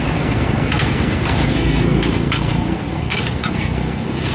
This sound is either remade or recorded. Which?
remade